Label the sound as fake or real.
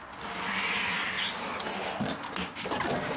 real